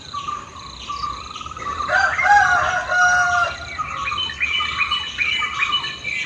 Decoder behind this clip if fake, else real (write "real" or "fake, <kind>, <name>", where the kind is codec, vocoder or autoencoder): real